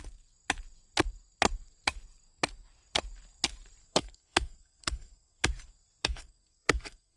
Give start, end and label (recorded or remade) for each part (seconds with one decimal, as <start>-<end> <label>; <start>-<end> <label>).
0.0-3.8 recorded; 3.8-5.4 remade; 5.4-6.0 recorded; 6.0-7.2 remade